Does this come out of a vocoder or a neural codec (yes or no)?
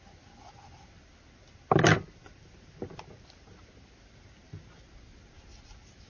no